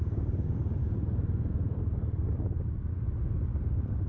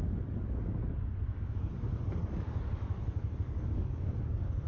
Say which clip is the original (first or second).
first